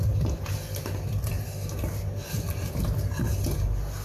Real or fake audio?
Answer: real